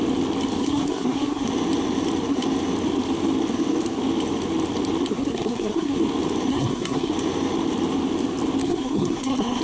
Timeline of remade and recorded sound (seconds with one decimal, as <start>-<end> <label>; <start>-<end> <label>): 0.0-0.6 recorded; 0.6-1.5 remade; 1.5-5.1 recorded; 5.1-6.0 remade; 6.0-6.5 recorded; 6.5-7.1 remade; 7.1-8.6 recorded; 8.6-9.6 remade